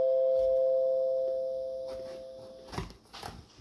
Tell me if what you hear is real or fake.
real